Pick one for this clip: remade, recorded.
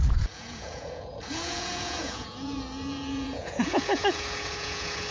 remade